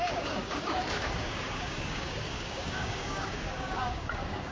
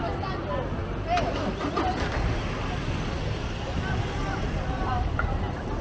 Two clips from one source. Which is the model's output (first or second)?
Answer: first